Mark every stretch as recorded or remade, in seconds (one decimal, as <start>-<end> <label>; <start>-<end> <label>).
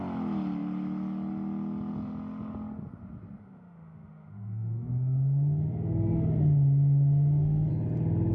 0.0-3.4 recorded; 3.4-7.7 remade; 7.7-8.3 recorded